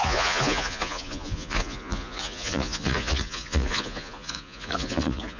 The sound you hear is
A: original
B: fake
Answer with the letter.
B